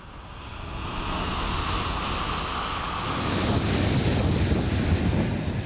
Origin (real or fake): real